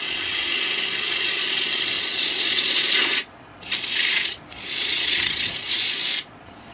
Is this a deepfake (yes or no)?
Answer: yes